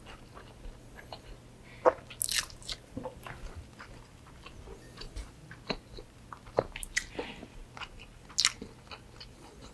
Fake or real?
real